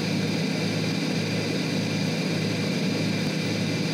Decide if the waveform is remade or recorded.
recorded